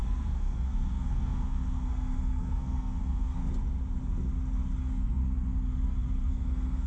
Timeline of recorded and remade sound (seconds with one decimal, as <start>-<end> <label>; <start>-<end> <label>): 0.0-3.4 remade; 3.4-4.8 recorded; 4.8-5.2 remade; 5.2-6.3 recorded; 6.3-6.9 remade